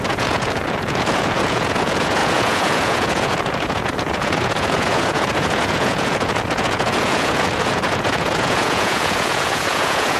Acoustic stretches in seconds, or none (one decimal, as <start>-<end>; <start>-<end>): none